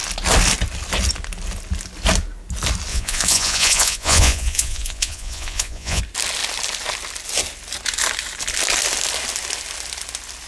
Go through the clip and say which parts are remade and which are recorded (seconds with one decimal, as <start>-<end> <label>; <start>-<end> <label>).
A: 0.0-2.9 recorded; 2.9-6.0 remade; 6.0-10.5 recorded